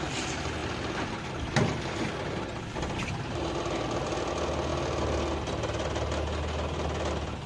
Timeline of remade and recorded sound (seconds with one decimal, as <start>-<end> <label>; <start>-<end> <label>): 0.0-7.5 recorded